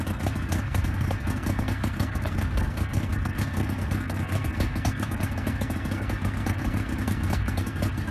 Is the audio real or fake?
fake